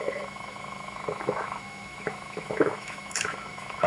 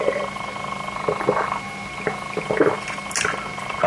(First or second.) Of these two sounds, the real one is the second